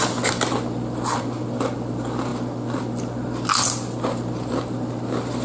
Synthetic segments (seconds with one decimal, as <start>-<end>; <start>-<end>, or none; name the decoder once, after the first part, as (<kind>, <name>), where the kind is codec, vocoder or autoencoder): none